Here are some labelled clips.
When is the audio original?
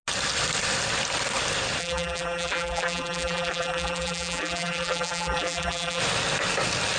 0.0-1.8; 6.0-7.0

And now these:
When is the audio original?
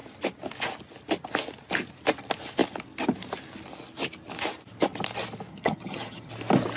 0.0-5.5; 6.3-6.8